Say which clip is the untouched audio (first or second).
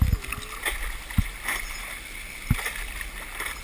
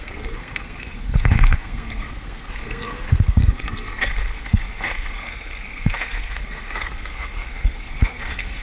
first